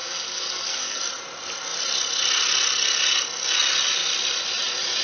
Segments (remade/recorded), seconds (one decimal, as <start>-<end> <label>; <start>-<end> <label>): 0.0-1.0 remade; 1.0-5.0 recorded